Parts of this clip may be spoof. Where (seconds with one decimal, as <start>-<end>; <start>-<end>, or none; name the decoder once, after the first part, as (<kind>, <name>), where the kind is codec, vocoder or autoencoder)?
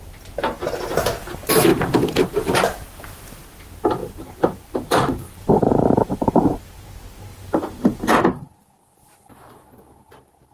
1.7-3.0 (vocoder, BigVGAN v2); 4.0-6.5; 7.3-8.2